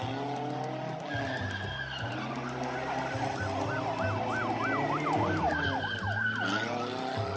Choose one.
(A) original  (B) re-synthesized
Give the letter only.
A